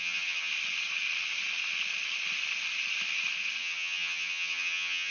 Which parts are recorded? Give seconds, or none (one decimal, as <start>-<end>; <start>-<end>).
0.5-3.6